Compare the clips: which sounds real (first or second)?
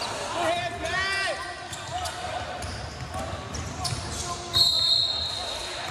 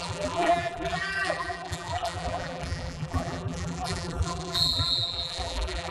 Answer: first